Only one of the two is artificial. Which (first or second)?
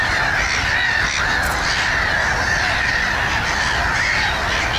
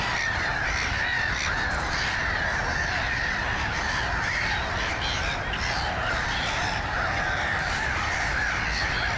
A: second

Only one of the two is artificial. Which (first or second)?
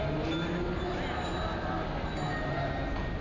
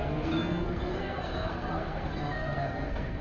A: second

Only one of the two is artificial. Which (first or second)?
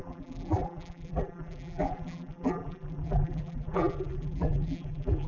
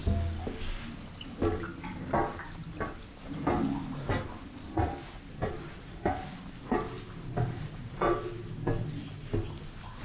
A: first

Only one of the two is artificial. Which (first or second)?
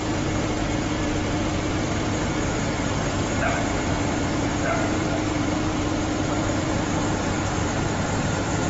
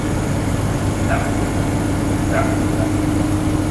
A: first